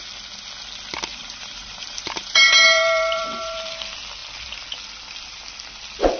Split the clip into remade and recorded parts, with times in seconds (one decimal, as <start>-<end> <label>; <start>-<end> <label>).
0.0-1.1 recorded; 1.1-3.7 remade; 3.7-6.2 recorded